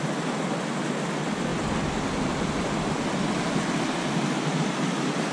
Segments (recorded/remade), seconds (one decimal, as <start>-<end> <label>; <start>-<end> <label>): 0.0-5.3 recorded